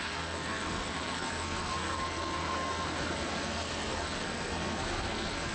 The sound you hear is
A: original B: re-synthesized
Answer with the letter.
B